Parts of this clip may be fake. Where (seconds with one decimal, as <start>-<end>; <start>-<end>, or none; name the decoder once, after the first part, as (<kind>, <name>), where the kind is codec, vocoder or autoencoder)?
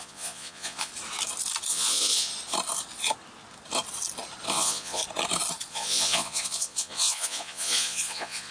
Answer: 0.0-0.9 (vocoder, Vocos); 1.7-2.3; 4.5-5.0; 5.7-8.5